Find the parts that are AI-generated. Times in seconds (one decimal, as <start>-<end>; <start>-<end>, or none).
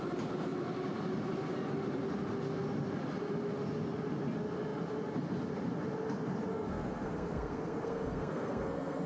6.5-9.1